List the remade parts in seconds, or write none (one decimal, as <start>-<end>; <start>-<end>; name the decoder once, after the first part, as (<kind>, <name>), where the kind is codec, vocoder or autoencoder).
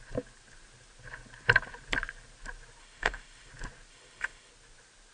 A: 2.8-3.5 (autoencoder, DAC-VAE); 3.9-4.5